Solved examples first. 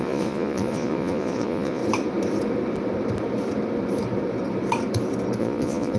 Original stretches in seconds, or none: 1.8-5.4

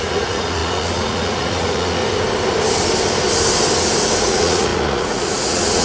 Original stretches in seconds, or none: 2.0-4.2

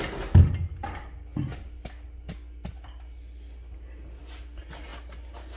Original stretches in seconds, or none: 0.0-5.6

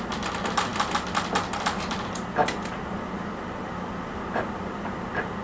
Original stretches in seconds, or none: 0.0-5.4